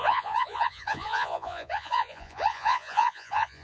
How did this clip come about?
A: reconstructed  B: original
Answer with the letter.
A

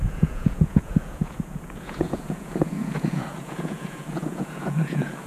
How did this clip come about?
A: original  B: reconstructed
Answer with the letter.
B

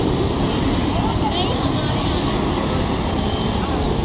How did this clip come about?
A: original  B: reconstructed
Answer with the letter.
A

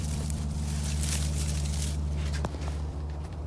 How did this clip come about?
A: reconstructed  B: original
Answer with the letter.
A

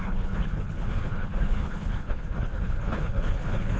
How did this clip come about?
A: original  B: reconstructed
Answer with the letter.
B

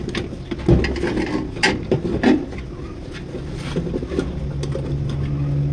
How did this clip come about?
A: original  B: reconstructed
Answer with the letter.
A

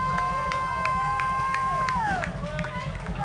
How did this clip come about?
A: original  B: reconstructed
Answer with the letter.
B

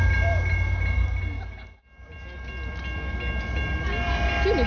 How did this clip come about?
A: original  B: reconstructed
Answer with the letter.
A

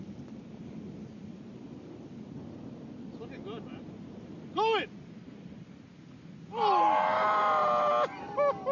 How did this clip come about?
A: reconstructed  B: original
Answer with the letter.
B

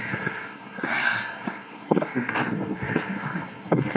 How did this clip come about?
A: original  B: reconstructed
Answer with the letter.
B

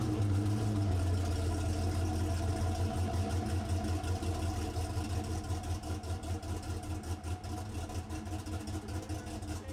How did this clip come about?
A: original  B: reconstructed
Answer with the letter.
A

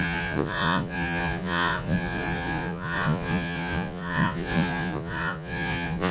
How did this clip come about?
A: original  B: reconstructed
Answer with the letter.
B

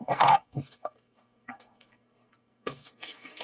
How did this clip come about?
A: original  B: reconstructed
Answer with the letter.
B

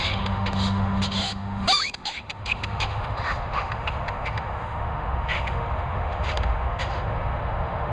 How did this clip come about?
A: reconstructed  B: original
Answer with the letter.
A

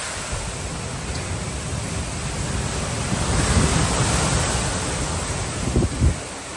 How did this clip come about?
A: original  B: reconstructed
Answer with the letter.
A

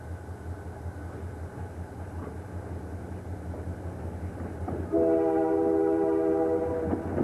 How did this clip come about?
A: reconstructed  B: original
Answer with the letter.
B